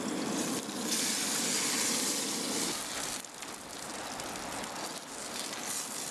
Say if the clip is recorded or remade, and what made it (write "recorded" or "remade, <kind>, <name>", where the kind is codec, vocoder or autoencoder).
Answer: recorded